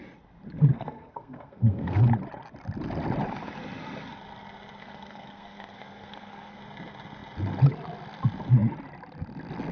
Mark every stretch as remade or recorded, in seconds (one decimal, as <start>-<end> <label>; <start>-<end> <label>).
0.0-0.7 recorded; 0.7-2.1 remade; 2.1-4.8 recorded; 4.8-6.6 remade; 6.6-9.7 recorded

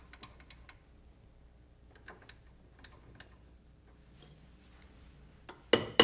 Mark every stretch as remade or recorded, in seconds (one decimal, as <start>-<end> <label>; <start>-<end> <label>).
0.0-6.0 recorded

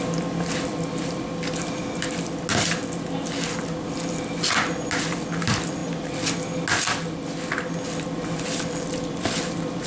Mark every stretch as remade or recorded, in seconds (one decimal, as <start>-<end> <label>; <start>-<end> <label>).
0.0-9.9 recorded